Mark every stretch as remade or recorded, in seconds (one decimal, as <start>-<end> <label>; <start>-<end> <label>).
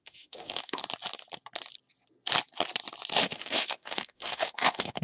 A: 0.0-0.8 remade; 0.8-3.2 recorded; 3.2-5.0 remade